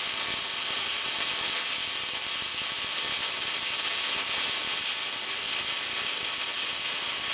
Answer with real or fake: real